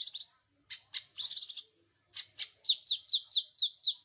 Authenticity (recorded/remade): recorded